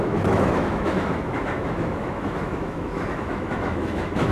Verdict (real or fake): fake